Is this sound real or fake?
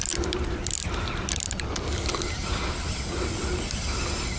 real